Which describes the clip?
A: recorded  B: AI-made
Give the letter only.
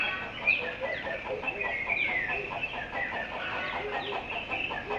A